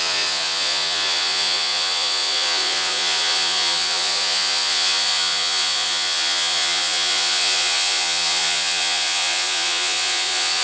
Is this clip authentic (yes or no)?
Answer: no